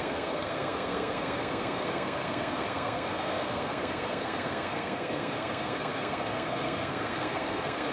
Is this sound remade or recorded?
remade